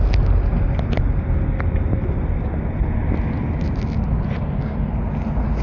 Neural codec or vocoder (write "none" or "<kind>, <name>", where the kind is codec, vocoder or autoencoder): none